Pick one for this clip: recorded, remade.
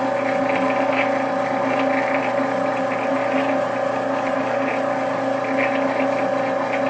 recorded